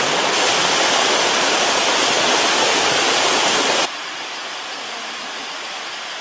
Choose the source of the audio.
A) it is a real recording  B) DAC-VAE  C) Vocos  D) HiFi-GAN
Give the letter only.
A